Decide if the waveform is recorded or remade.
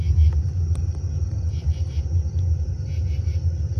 remade